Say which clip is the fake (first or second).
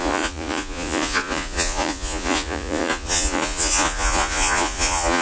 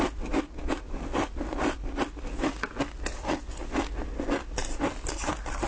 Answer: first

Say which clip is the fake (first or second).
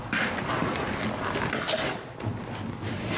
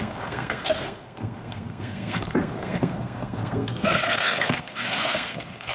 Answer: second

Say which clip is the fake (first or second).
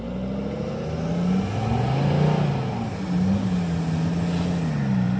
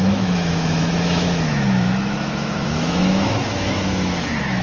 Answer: second